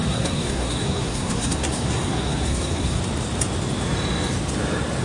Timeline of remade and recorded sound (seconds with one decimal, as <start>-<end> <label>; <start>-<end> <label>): 0.0-3.0 remade; 3.0-5.0 recorded